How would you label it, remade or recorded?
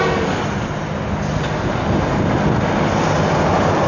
recorded